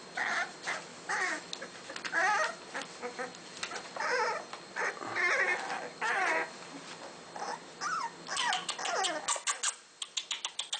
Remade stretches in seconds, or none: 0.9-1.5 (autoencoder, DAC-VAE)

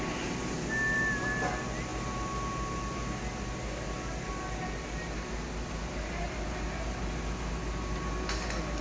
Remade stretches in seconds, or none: none

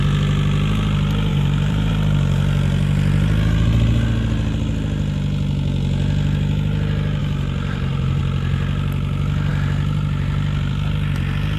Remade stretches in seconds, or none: 1.3-1.9 (vocoder, BigVGAN v2); 7.2-8.2

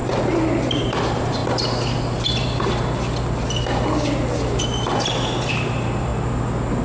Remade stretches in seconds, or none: 0.7-1.4 (vocoder, BigVGAN v2); 5.5-6.1